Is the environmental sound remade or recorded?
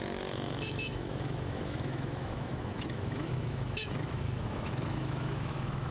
remade